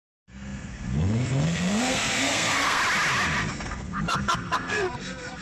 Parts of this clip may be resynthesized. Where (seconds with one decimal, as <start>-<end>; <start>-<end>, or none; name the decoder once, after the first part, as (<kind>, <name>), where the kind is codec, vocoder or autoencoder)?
0.0-2.8 (codec, SNAC); 3.5-5.4